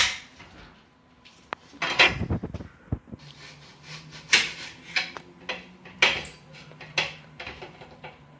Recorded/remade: recorded